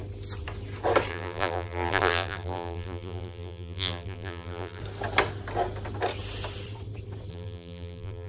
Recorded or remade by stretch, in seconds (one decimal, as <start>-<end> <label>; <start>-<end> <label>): 0.0-1.1 recorded; 1.1-4.8 remade; 4.8-7.3 recorded; 7.3-8.3 remade